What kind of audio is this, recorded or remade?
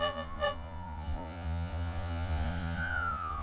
remade